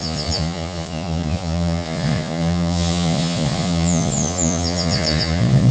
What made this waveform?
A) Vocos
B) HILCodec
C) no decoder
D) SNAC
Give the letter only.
A